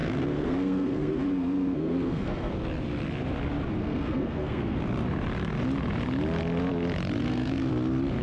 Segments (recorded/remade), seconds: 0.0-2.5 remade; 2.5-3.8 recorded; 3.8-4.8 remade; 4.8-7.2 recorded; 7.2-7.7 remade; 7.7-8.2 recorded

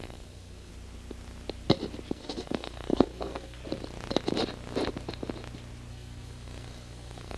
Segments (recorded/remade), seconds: 0.0-0.7 remade; 0.7-2.1 recorded; 2.1-3.6 remade; 3.6-5.9 recorded; 5.9-7.4 remade

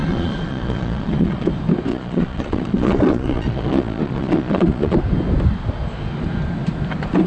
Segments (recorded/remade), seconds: 0.0-1.5 remade; 1.5-1.9 recorded; 1.9-5.0 remade; 5.0-7.3 recorded

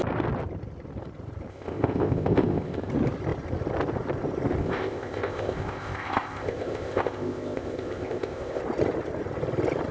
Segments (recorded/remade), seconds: 0.0-1.5 recorded; 1.5-2.9 remade; 2.9-4.6 recorded; 4.6-8.6 remade; 8.6-9.9 recorded

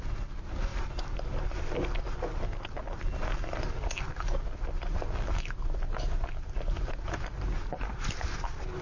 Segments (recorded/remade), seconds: 0.0-8.8 recorded